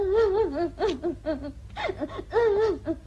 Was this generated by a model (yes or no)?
no